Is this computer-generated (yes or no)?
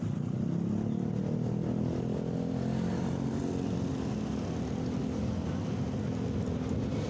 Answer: no